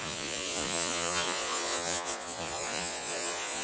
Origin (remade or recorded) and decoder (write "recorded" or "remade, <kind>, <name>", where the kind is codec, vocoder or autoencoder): remade, vocoder, Vocos